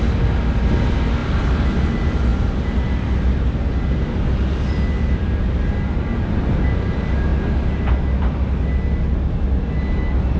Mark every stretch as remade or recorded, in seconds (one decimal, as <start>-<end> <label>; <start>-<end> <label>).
0.0-10.4 recorded